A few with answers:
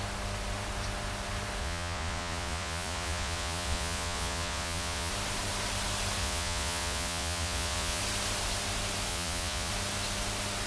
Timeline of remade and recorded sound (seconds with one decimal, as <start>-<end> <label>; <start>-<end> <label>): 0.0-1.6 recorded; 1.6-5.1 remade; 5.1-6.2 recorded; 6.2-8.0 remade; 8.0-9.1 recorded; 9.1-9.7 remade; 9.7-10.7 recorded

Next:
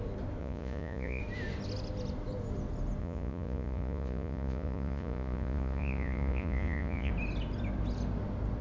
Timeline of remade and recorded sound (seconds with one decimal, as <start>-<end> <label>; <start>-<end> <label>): 0.0-0.4 recorded; 0.4-1.2 remade; 1.2-3.0 recorded; 3.0-7.1 remade; 7.1-8.6 recorded

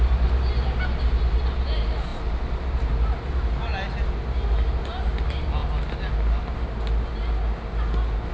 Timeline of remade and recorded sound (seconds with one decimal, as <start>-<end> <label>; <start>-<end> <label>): 0.0-8.3 recorded